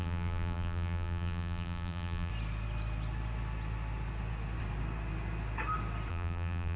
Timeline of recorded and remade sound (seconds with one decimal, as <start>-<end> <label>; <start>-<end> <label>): 0.0-2.3 remade; 2.3-6.1 recorded; 6.1-6.8 remade

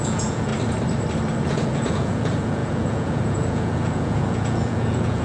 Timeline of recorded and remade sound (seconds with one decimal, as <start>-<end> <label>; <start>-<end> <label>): 0.0-0.5 remade; 0.5-1.4 recorded; 1.4-5.2 remade